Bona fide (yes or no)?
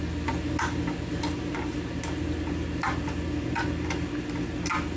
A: yes